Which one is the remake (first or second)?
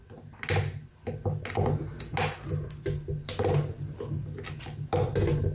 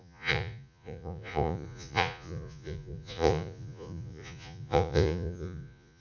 second